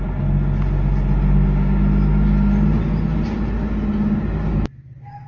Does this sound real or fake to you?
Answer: real